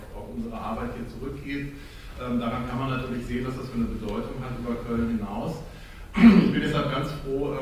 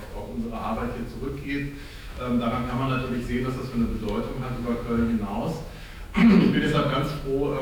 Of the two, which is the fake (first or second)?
second